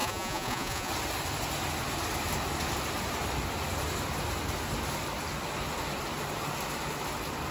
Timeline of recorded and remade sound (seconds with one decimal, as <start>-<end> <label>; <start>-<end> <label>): 0.0-0.9 remade; 0.9-7.5 recorded